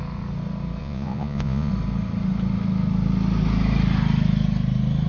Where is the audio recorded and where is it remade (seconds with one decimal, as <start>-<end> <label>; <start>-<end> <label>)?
0.0-0.8 recorded; 0.8-1.7 remade; 1.7-5.1 recorded